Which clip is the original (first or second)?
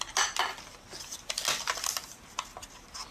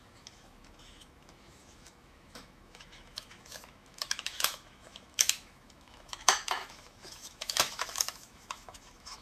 first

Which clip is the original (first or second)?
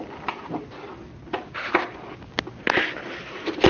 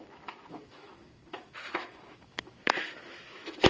first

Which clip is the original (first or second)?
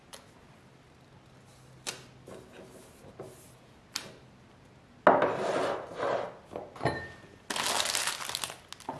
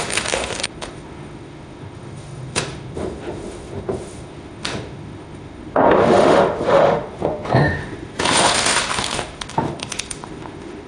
first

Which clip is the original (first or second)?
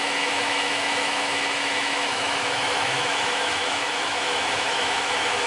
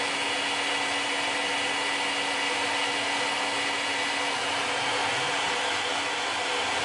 second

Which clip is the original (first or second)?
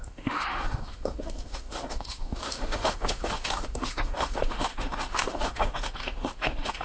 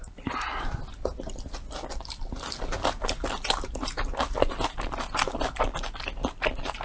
second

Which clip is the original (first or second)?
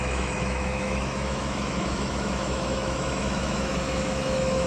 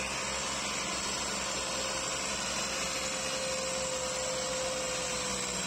second